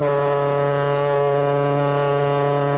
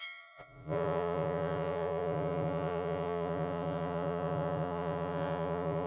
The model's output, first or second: second